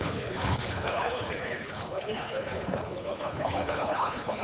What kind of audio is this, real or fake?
fake